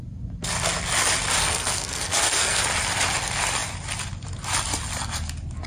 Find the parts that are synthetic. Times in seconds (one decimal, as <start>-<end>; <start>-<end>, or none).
1.4-2.6